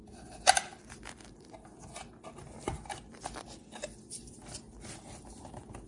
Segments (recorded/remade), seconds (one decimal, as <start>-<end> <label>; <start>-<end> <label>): 0.0-5.9 recorded